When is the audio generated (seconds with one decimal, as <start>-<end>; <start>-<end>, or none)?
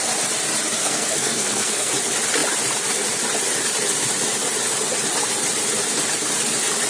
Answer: 0.8-1.9